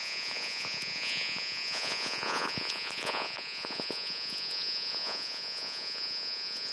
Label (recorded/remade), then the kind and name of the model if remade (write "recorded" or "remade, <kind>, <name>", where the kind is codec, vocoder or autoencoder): remade, vocoder, Vocos